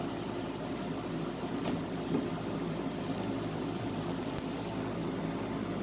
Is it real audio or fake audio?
real